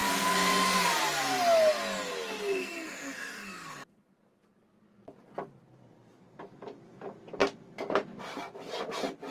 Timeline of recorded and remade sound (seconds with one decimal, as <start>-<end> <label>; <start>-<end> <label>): 0.0-0.9 remade; 0.9-2.4 recorded; 2.4-4.1 remade; 4.1-9.3 recorded